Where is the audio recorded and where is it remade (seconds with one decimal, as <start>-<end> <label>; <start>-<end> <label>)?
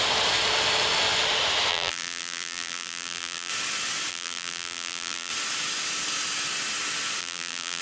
0.0-1.7 recorded; 1.7-3.5 remade; 3.5-4.1 recorded; 4.1-5.3 remade; 5.3-7.2 recorded; 7.2-7.8 remade